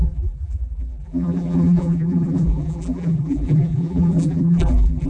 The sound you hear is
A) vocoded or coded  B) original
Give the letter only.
A